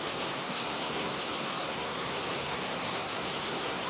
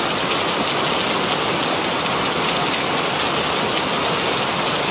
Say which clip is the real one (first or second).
second